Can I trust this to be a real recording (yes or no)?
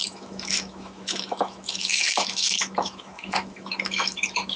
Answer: no